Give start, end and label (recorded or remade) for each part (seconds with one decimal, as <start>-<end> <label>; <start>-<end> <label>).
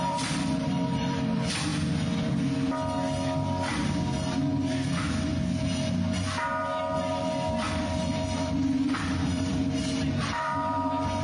0.0-1.7 remade; 1.7-4.7 recorded; 4.7-5.3 remade; 5.3-7.6 recorded; 7.6-9.6 remade; 9.6-10.2 recorded; 10.2-11.2 remade